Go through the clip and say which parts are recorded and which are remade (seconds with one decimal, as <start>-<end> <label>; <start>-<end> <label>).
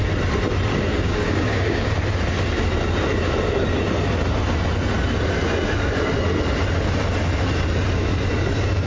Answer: 0.0-0.7 recorded; 0.7-1.9 remade; 1.9-8.9 recorded